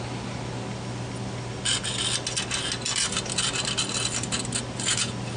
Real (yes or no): yes